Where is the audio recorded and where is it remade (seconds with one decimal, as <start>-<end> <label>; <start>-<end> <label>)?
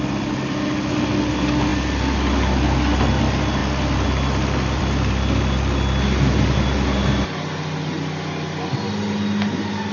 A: 0.0-9.9 recorded